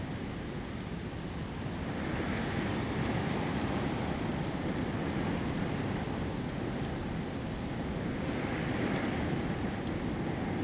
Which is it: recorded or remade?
recorded